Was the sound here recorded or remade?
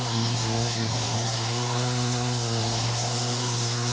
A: remade